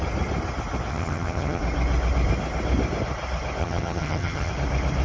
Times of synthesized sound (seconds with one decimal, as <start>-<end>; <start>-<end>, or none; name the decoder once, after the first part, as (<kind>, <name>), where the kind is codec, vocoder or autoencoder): 0.9-1.6 (vocoder, HiFi-GAN); 3.6-4.5